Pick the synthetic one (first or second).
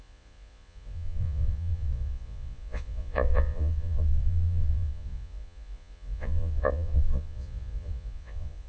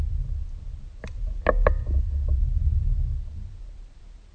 first